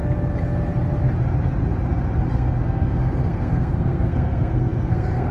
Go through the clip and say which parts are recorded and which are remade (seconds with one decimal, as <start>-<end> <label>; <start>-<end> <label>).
0.0-2.3 recorded; 2.3-5.3 remade